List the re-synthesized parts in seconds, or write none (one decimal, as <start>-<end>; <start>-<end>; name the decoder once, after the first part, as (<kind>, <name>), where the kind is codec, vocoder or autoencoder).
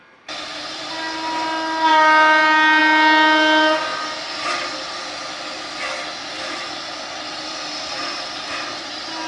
none